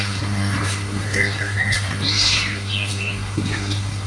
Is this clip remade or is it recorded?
remade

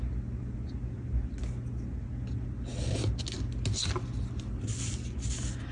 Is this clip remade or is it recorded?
recorded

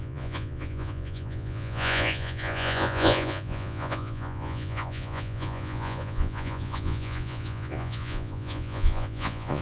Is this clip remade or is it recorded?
remade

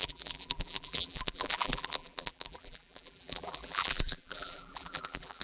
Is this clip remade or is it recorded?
remade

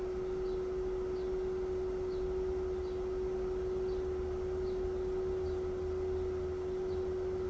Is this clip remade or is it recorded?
recorded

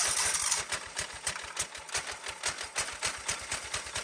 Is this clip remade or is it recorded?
recorded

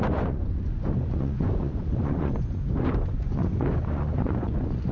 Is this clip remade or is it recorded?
remade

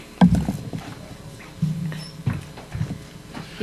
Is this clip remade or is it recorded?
recorded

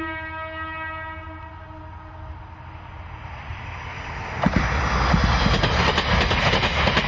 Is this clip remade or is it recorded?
recorded